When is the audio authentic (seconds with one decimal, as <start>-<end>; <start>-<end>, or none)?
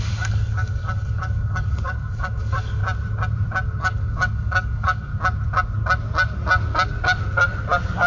2.8-3.8; 5.1-8.1